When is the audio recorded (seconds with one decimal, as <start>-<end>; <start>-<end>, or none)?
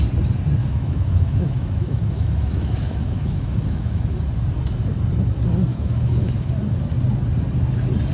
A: 0.0-0.6; 4.2-5.7; 6.5-8.1